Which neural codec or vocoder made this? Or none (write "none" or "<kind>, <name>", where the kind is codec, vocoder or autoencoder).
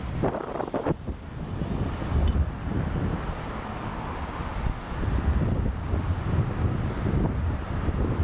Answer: none